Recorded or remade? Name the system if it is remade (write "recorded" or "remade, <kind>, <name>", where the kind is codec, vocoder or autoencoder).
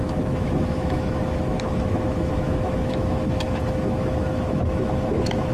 remade, autoencoder, DAC-VAE